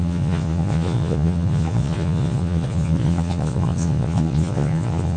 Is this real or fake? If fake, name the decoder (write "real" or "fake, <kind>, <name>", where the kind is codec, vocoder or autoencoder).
fake, vocoder, Vocos